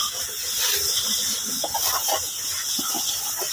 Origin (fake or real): real